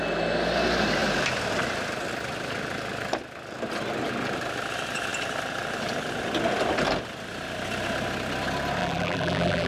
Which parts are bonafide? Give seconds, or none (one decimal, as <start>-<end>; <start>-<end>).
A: 0.0-8.8